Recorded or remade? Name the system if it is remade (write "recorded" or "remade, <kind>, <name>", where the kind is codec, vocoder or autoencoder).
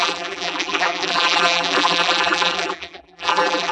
remade, vocoder, BigVGAN v2